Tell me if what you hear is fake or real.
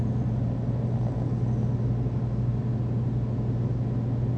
real